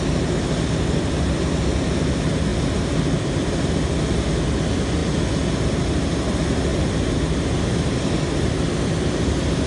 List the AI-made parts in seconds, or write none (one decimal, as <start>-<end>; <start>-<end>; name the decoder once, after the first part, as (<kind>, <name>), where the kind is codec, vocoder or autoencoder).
none